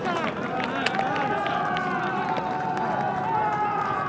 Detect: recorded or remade recorded